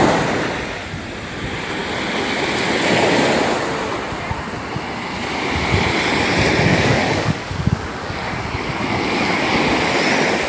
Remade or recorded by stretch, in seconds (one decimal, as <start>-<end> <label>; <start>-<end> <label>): 0.0-6.7 recorded; 6.7-9.5 remade; 9.5-10.5 recorded

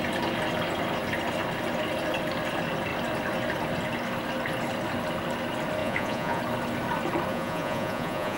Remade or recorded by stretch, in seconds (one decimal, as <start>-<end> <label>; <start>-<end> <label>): 0.0-5.8 recorded; 5.8-6.4 remade; 6.4-7.3 recorded; 7.3-8.4 remade

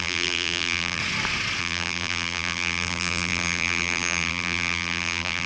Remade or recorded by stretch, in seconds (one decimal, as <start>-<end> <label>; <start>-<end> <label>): 0.0-1.0 remade; 1.0-1.6 recorded; 1.6-5.5 remade

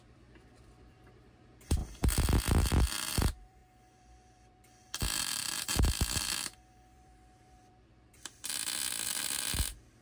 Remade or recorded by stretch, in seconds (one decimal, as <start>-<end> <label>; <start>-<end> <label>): 0.0-1.8 remade; 1.8-2.6 recorded; 2.6-10.0 remade

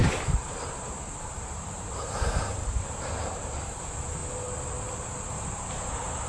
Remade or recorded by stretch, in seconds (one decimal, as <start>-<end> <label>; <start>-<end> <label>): 0.0-4.2 remade; 4.2-5.3 recorded; 5.3-6.3 remade

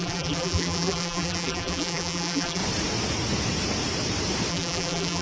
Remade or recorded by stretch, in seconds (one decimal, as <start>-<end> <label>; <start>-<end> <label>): 0.0-2.6 remade; 2.6-4.5 recorded; 4.5-5.2 remade

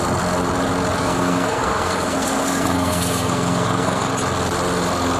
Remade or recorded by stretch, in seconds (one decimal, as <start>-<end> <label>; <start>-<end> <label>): 0.0-1.0 recorded; 1.0-4.1 remade; 4.1-5.2 recorded

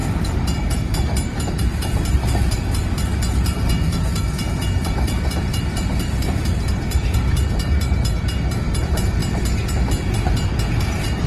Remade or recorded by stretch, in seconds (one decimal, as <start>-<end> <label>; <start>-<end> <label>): 0.0-9.2 remade; 9.2-10.8 recorded; 10.8-11.3 remade